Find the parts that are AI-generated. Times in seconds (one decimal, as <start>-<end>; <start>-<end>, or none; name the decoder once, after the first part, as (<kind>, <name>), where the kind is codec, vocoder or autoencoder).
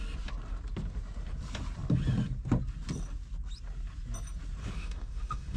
4.6-5.6 (autoencoder, DAC-VAE)